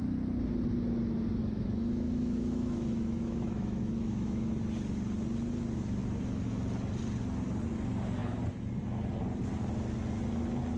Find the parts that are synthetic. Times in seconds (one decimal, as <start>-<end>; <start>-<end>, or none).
1.4-4.5